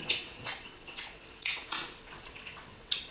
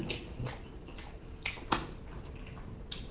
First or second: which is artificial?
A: first